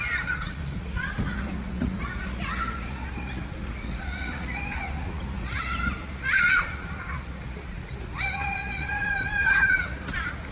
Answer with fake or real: fake